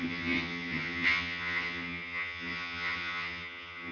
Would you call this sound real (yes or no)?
no